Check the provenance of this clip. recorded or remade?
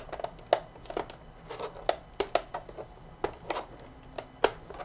recorded